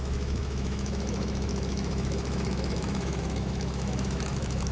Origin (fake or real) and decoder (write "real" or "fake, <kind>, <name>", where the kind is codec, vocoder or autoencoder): fake, autoencoder, DAC-VAE